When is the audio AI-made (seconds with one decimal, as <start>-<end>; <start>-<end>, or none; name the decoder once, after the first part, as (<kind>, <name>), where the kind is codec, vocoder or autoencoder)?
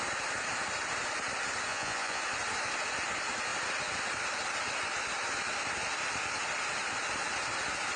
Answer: 1.7-2.2 (vocoder, Vocos)